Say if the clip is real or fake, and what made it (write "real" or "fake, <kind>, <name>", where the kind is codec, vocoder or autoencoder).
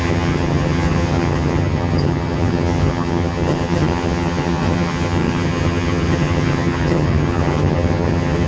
fake, vocoder, HiFi-GAN